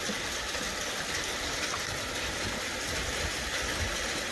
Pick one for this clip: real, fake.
real